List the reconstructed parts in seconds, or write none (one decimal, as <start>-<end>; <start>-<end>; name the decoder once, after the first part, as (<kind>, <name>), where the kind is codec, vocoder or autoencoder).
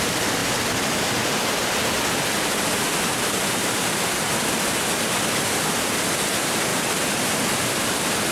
none